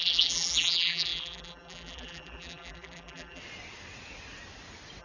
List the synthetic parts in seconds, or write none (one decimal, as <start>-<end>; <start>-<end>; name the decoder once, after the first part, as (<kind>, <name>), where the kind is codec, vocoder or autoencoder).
0.0-3.4 (vocoder, BigVGAN v2)